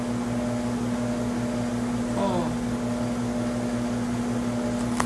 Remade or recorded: recorded